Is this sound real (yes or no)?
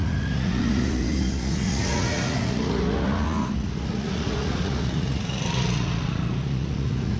no